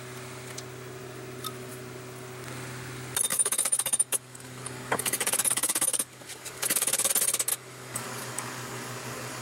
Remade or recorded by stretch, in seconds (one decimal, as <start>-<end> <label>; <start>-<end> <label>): 0.0-3.3 recorded; 3.3-7.1 remade; 7.1-7.5 recorded; 7.5-9.4 remade